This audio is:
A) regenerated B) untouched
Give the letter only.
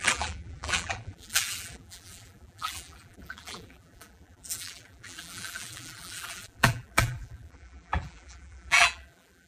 A